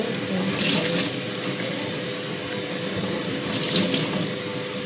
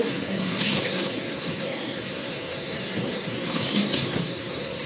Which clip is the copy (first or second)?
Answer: second